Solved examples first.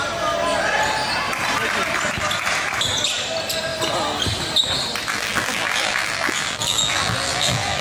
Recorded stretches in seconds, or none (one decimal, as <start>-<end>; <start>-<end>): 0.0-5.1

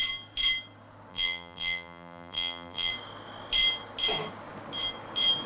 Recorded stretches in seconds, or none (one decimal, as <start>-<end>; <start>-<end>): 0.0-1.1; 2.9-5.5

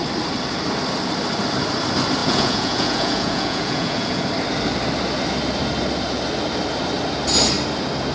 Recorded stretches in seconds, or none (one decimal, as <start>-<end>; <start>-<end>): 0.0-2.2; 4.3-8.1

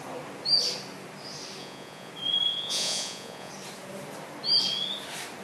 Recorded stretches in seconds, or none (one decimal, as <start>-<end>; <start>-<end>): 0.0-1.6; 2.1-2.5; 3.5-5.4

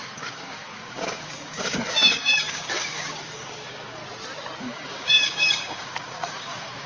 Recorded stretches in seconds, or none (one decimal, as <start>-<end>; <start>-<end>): 4.0-4.6